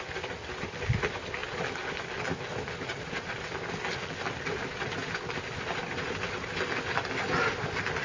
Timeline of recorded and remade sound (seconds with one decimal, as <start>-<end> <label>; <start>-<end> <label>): 0.0-8.0 recorded